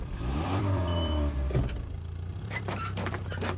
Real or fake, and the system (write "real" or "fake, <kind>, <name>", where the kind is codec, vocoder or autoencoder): fake, vocoder, BigVGAN v2